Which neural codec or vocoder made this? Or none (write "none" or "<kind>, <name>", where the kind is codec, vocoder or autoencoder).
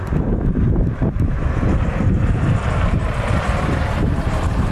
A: vocoder, BigVGAN v2